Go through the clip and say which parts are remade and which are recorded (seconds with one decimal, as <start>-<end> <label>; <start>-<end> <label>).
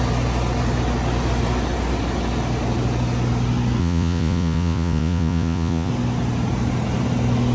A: 0.0-3.8 recorded; 3.8-5.9 remade; 5.9-7.5 recorded